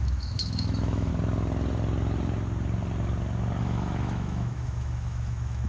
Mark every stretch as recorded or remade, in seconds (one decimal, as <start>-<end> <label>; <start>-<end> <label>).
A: 0.0-1.1 remade; 1.1-3.6 recorded; 3.6-5.7 remade